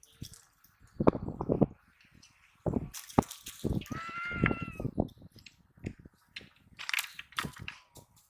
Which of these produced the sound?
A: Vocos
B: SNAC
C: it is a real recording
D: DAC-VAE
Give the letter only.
C